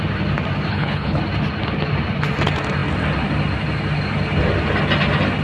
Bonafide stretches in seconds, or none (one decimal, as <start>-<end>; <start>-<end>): 0.0-0.7; 1.2-5.4